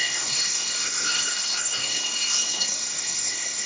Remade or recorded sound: remade